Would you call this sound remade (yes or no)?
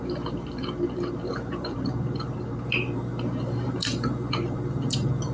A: yes